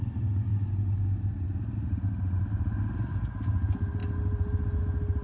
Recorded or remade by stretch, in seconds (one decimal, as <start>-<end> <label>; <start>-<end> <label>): 0.0-5.2 recorded